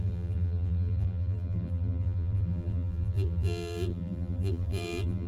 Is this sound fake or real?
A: fake